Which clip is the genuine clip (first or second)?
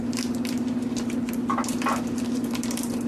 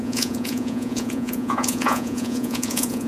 first